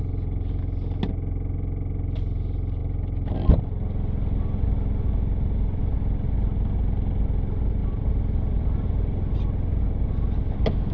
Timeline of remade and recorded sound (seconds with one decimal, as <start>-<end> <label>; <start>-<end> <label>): 0.0-7.8 recorded; 7.8-8.9 remade; 8.9-10.9 recorded